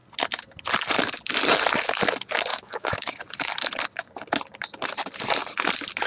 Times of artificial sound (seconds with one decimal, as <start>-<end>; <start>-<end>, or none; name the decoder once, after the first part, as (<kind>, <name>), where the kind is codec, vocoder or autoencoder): 2.5-3.1 (autoencoder, DAC-VAE)

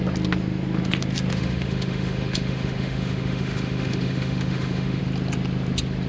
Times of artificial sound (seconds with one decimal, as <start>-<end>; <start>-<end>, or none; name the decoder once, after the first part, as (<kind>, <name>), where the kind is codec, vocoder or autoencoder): 1.3-5.0 (autoencoder, DAC-VAE)

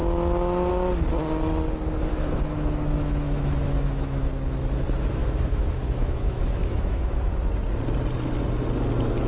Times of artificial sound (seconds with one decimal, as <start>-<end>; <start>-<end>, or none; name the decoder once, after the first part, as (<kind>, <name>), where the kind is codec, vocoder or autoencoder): 2.1-4.3 (autoencoder, DAC-VAE); 5.2-7.4

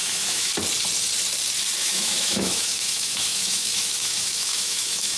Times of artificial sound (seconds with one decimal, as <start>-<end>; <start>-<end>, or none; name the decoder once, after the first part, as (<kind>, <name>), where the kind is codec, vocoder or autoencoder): 0.0-0.5 (autoencoder, DAC-VAE); 1.8-5.2

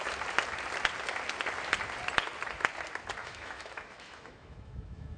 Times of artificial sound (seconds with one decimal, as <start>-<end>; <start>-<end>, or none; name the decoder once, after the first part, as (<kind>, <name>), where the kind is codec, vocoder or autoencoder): 3.2-5.2 (autoencoder, DAC-VAE)

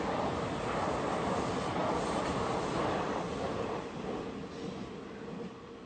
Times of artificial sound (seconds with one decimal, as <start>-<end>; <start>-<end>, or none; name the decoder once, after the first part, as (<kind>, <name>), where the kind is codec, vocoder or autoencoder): none

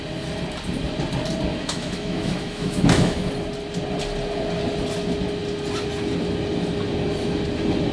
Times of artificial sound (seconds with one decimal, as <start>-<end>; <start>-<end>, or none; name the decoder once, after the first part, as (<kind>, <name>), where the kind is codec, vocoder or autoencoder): 1.5-3.3 (autoencoder, DAC-VAE)

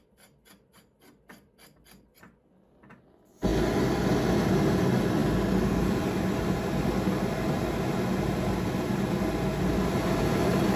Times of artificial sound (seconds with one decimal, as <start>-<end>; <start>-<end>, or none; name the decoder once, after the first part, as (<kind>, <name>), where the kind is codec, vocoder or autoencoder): none